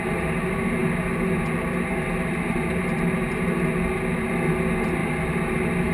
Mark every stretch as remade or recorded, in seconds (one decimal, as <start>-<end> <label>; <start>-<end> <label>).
0.0-5.9 recorded